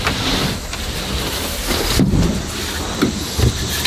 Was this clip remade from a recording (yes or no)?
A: no